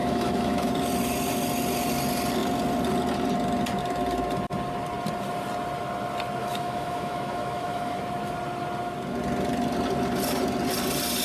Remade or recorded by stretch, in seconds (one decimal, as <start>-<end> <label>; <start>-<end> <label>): 0.0-0.7 remade; 0.7-6.4 recorded; 6.4-8.0 remade; 8.0-11.2 recorded